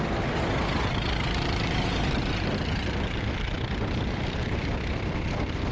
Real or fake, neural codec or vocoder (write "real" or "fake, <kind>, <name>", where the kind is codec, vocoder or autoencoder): real